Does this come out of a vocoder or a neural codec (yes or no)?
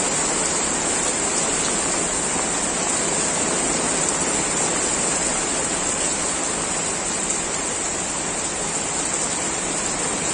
no